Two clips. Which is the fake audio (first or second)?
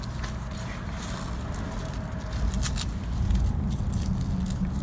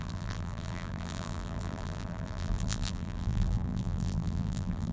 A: second